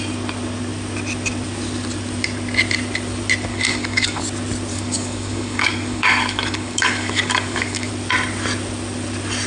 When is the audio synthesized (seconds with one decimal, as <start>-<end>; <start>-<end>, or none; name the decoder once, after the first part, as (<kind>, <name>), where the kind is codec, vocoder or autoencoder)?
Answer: 3.5-4.2 (codec, DAC); 4.7-7.9